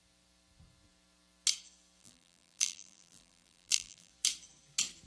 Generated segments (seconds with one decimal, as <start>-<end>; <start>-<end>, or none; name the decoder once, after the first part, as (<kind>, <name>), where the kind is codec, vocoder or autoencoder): 2.0-4.1 (vocoder, BigVGAN v2)